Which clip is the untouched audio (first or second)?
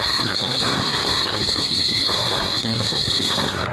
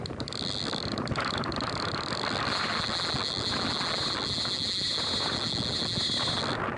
second